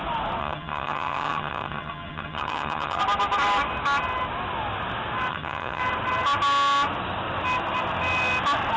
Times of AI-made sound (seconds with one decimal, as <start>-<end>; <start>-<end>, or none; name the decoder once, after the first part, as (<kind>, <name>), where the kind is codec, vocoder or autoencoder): 0.4-3.0 (vocoder, HiFi-GAN); 5.3-5.8